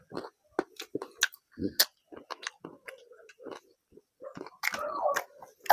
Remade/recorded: recorded